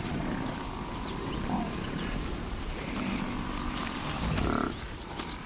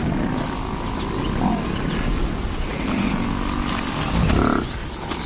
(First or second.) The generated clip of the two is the first